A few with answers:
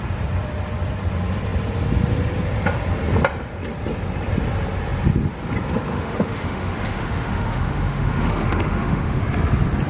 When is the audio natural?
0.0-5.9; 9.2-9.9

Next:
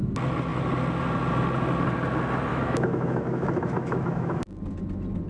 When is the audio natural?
0.0-2.5; 4.4-5.3

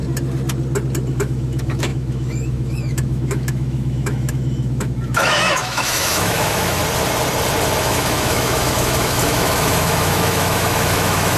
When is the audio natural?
0.0-1.1; 6.8-7.8

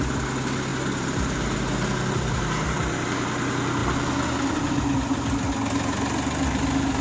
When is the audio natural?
0.0-7.0

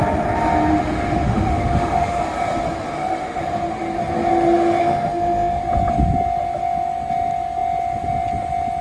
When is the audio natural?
0.0-0.7; 2.2-2.9; 3.4-4.8; 5.6-8.8

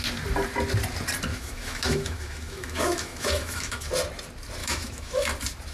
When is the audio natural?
0.0-1.3; 3.9-4.6; 5.3-5.7

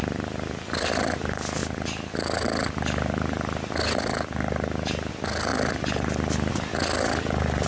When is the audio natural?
0.0-7.7